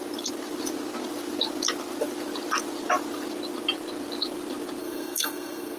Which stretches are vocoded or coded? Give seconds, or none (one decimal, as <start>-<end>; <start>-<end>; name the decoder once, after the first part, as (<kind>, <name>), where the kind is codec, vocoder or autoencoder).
4.8-5.8 (codec, SNAC)